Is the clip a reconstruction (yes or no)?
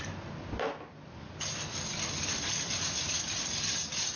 no